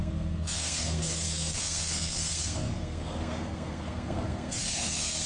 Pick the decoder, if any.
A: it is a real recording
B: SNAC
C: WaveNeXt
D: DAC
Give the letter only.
B